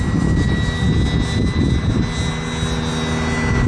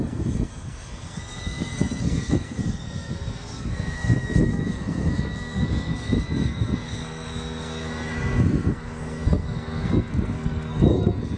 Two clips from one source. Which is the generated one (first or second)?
second